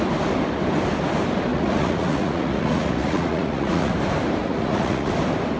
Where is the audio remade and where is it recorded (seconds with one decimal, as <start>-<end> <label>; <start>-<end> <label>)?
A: 0.0-1.5 recorded; 1.5-3.9 remade; 3.9-4.4 recorded; 4.4-5.1 remade; 5.1-5.6 recorded